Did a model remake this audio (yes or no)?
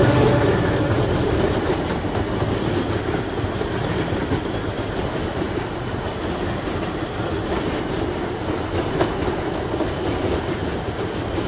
no